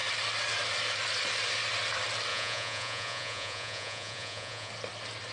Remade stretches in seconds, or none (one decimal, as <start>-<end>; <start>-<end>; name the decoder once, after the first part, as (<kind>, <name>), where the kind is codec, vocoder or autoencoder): 2.3-4.7 (vocoder, Vocos)